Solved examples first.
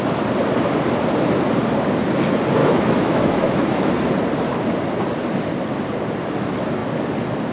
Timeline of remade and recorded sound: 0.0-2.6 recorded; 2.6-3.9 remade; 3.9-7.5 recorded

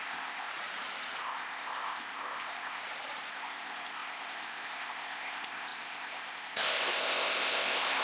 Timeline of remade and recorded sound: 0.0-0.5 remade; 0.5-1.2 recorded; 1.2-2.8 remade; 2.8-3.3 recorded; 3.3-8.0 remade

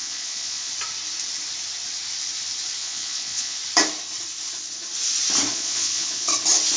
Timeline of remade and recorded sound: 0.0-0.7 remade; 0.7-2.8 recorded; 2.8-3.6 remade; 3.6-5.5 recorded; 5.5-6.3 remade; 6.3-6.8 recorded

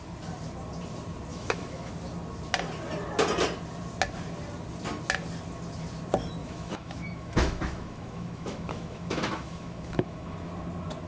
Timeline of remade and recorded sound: 0.0-1.3 recorded; 1.3-1.9 remade; 1.9-6.4 recorded; 6.4-10.5 remade; 10.5-11.1 recorded